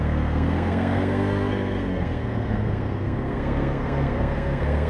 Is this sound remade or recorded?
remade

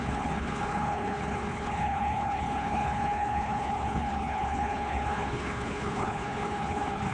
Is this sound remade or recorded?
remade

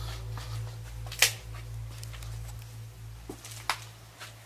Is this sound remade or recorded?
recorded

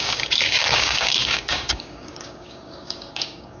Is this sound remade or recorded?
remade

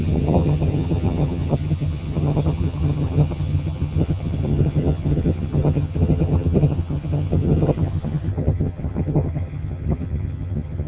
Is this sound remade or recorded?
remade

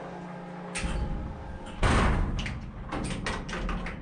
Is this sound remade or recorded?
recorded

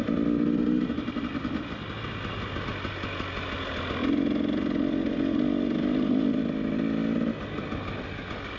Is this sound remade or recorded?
recorded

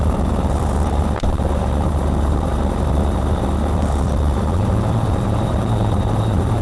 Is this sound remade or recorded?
remade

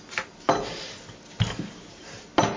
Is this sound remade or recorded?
recorded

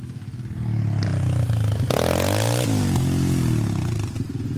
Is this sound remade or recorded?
recorded